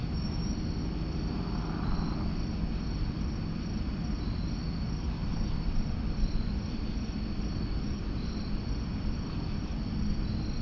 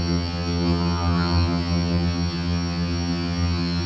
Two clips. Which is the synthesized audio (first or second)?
second